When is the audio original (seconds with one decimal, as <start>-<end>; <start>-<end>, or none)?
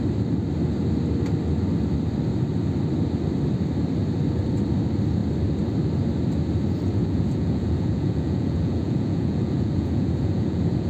0.0-7.0